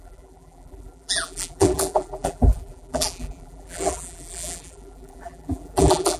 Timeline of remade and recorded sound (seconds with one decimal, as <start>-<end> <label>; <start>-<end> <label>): 0.0-6.2 remade